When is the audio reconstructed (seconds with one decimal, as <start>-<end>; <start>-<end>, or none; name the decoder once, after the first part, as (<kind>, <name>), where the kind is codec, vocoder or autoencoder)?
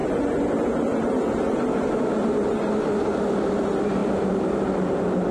none